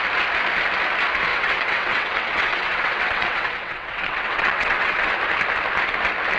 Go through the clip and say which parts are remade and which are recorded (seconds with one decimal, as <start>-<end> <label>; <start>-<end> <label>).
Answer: 0.0-1.3 recorded; 1.3-5.1 remade; 5.1-6.4 recorded